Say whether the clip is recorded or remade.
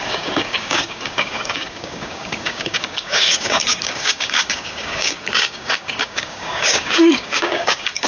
remade